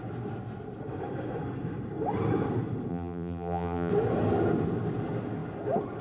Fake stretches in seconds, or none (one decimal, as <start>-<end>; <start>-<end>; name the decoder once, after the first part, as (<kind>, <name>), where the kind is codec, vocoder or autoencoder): 2.9-3.9 (vocoder, BigVGAN v2)